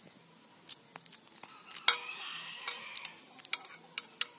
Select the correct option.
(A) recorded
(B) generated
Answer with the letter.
A